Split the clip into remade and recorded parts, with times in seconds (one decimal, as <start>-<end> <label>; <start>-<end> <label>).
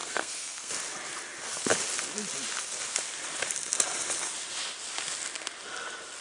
0.0-0.7 remade; 0.7-6.2 recorded